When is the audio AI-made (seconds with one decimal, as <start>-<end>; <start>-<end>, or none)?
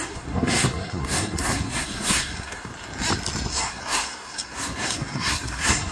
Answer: 0.0-2.7; 3.5-5.9